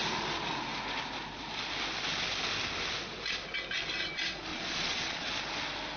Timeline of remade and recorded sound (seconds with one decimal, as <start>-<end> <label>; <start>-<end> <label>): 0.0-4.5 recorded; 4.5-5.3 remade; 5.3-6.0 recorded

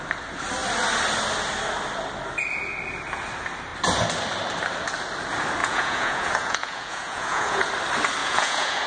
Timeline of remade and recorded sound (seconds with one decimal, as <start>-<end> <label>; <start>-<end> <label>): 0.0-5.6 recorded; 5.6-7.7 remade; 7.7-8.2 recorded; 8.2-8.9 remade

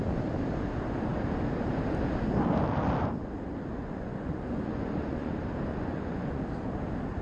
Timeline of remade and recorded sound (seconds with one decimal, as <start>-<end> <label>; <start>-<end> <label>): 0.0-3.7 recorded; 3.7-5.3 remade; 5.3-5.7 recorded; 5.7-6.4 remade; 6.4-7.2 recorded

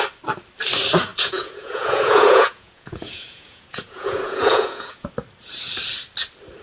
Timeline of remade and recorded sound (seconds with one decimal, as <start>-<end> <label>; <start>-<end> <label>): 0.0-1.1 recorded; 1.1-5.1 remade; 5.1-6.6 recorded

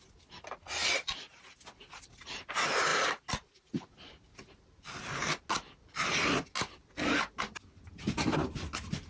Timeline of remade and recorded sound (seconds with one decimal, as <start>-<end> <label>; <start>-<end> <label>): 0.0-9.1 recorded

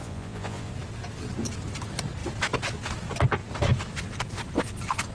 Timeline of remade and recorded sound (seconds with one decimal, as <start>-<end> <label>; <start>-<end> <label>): 0.0-0.7 remade; 0.7-5.1 recorded

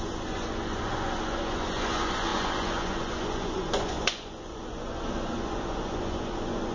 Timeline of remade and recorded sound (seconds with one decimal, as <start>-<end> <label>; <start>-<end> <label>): 0.0-6.7 remade

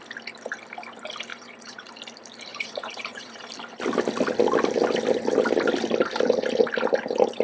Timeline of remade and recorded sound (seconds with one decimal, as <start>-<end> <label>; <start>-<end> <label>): 0.0-1.3 recorded; 1.3-1.9 remade; 1.9-2.5 recorded; 2.5-3.5 remade; 3.5-7.4 recorded